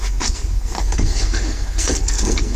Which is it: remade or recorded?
remade